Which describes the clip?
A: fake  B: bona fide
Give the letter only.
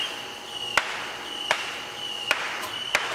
B